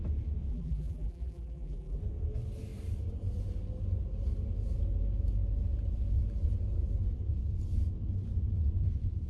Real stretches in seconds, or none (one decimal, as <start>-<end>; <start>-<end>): 0.0-0.5; 2.0-9.3